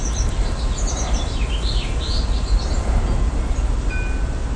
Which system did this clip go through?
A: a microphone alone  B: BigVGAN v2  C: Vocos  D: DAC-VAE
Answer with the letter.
A